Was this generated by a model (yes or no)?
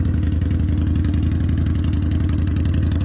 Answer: no